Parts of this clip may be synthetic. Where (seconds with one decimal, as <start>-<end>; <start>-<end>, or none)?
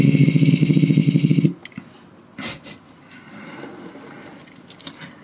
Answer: none